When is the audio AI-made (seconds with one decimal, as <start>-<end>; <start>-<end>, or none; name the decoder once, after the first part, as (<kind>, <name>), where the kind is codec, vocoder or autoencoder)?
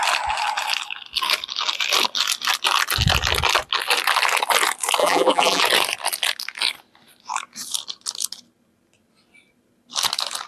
5.0-5.6 (vocoder, BigVGAN v2)